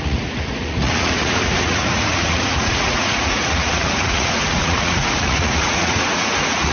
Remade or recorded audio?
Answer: remade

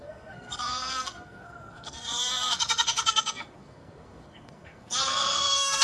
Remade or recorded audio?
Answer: remade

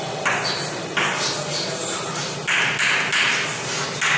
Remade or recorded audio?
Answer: recorded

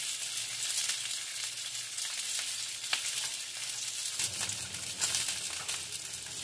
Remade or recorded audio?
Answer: recorded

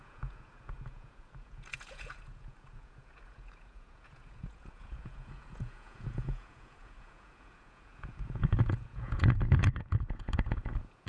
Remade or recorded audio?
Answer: remade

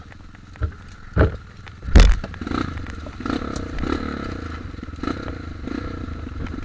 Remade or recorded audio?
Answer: recorded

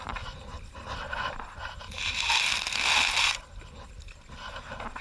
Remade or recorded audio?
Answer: recorded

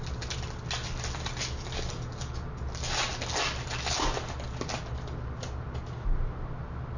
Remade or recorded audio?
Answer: recorded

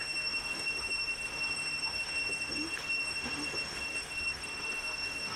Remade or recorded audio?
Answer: remade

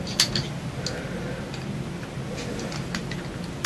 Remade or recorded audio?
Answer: recorded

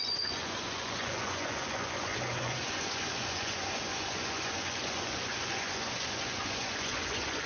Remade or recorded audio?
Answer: remade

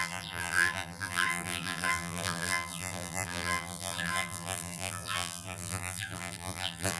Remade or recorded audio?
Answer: remade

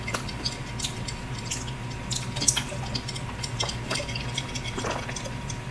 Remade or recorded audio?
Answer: recorded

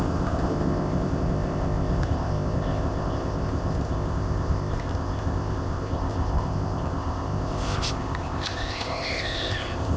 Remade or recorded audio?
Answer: remade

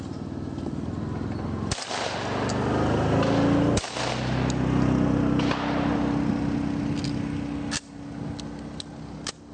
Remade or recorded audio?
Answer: recorded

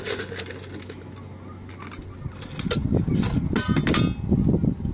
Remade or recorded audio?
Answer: recorded